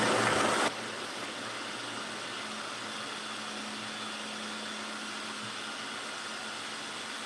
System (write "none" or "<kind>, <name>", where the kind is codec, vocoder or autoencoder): none